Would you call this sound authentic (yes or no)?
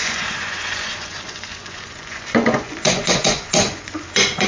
no